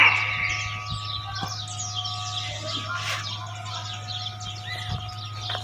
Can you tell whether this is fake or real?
real